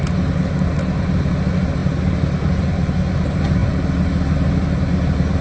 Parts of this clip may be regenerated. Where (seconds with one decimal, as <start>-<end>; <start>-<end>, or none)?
none